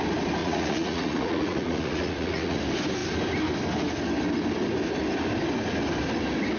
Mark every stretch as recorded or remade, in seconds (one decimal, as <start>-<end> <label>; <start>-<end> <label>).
0.0-0.4 recorded; 0.4-2.6 remade; 2.6-6.6 recorded